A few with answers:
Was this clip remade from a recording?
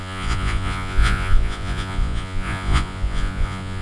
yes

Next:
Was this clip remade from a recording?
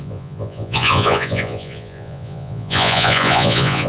yes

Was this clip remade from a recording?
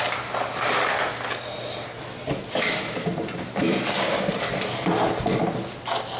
no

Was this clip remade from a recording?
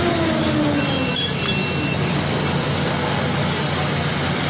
no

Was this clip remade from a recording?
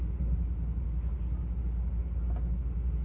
no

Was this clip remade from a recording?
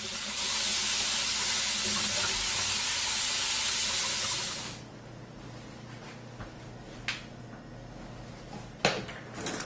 no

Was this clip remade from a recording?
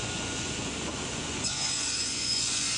yes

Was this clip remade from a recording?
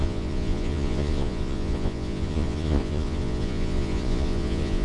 yes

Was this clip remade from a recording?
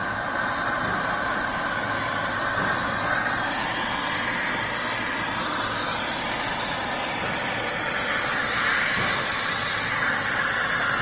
no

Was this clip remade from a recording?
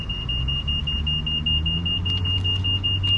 no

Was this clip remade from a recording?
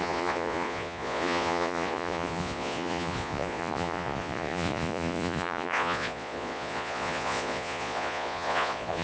yes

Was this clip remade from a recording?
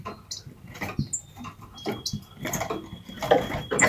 no